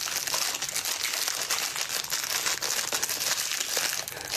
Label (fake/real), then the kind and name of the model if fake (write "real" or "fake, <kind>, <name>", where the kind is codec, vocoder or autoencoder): real